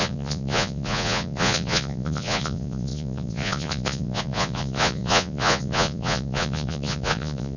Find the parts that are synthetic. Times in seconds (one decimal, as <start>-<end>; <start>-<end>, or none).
0.0-7.6